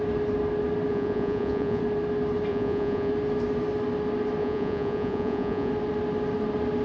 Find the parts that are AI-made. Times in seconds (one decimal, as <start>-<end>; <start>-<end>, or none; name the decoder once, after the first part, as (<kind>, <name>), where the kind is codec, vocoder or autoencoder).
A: 0.9-1.8 (vocoder, Vocos); 2.5-3.1; 4.4-5.7